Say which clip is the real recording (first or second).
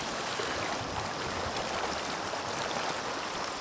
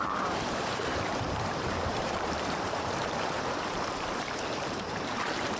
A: first